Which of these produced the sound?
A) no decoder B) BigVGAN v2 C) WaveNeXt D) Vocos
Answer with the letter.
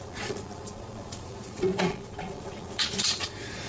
D